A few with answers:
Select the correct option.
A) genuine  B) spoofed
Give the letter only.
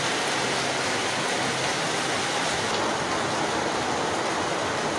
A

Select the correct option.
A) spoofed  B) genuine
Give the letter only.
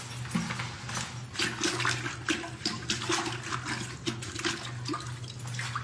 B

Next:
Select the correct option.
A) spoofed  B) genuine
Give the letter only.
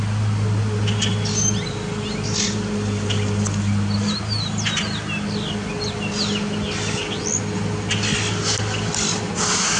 B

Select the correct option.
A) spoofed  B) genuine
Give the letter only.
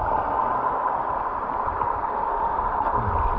B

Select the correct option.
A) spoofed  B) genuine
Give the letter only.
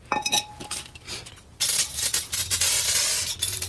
B